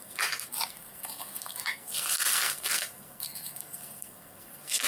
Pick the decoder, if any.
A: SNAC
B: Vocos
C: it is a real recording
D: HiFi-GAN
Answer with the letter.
A